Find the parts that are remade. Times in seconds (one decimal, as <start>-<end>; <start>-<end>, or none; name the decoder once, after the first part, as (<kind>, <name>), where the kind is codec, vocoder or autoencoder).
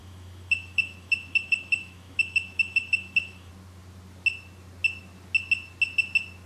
0.0-3.5 (autoencoder, DAC-VAE)